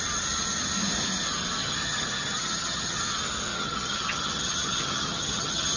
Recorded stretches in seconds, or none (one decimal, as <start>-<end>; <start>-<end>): 0.0-1.6; 3.0-3.5